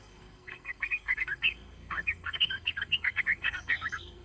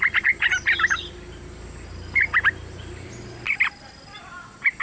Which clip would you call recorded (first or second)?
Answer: second